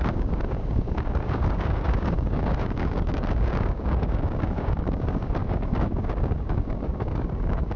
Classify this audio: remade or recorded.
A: remade